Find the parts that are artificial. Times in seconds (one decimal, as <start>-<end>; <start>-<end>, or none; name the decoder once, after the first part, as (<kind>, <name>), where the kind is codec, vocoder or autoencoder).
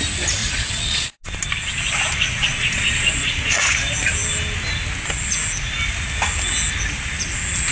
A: 0.4-1.2 (vocoder, Vocos); 2.4-3.6